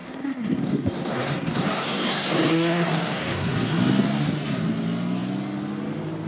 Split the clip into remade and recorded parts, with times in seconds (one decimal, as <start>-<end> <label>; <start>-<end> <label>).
0.0-3.8 remade; 3.8-6.3 recorded